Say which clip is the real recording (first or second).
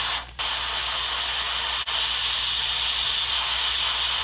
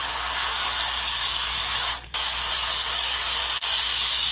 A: first